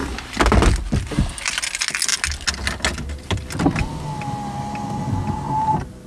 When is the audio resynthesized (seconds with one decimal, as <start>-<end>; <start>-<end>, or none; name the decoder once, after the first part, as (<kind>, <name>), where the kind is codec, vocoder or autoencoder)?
none